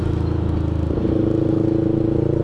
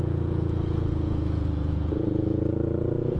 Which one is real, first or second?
first